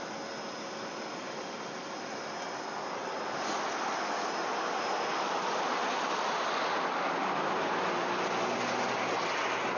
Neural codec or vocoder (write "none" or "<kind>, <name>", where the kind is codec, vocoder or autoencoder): none